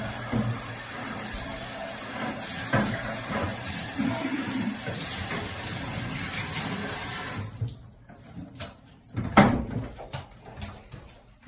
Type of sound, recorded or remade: remade